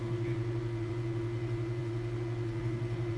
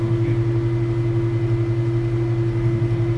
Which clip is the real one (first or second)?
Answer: second